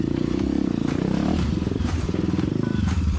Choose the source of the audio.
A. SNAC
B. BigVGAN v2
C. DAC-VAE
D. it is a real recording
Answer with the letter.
B